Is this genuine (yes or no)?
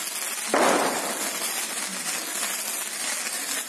yes